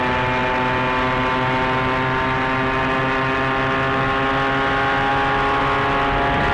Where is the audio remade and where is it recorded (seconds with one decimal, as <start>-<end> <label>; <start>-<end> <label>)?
0.0-6.5 recorded